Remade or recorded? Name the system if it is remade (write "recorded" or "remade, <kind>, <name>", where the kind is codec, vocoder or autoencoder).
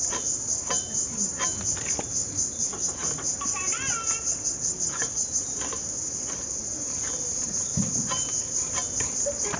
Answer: remade, vocoder, BigVGAN v2